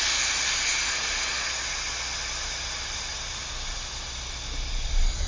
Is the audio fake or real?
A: real